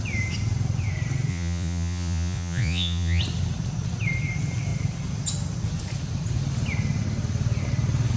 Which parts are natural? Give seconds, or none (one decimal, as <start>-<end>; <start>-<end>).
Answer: 0.0-1.3; 3.2-8.2